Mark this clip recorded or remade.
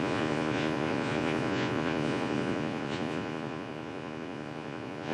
remade